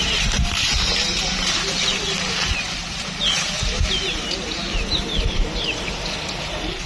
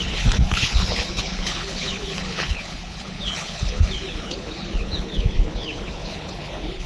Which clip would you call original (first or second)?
first